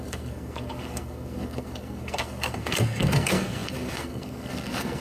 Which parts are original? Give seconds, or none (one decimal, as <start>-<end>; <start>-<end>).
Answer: none

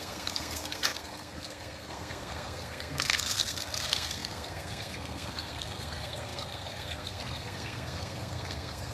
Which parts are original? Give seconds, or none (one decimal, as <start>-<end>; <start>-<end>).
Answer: none

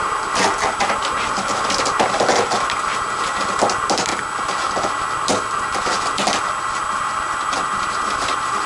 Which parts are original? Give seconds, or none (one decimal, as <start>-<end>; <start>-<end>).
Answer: 0.0-8.7

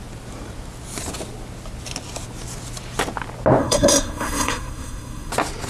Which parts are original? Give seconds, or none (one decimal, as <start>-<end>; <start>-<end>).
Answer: 0.0-3.6; 5.3-5.7

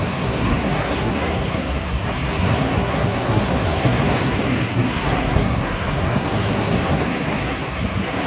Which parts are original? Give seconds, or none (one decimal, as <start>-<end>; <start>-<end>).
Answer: none

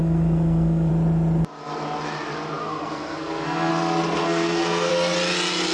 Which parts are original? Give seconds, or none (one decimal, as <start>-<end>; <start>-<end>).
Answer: 0.9-2.6; 3.7-4.2; 4.9-5.7